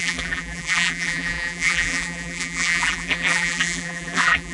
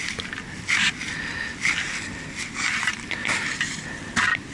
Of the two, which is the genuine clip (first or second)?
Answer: second